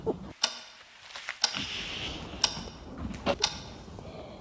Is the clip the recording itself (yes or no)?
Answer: yes